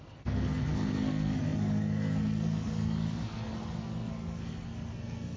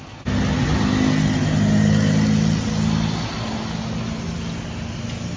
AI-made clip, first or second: first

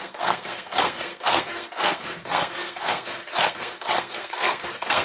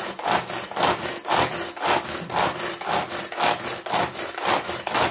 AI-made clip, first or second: first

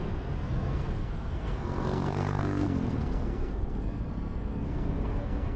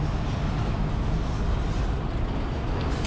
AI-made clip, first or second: first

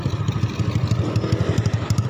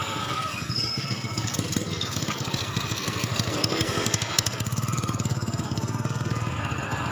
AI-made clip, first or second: second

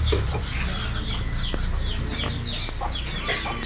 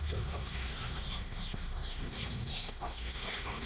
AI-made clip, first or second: second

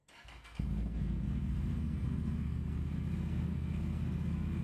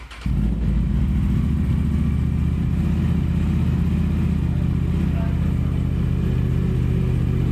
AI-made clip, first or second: first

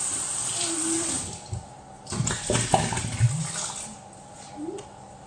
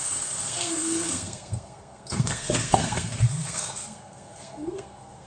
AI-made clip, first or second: second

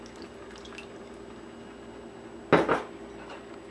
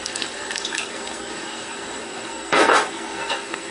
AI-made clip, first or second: second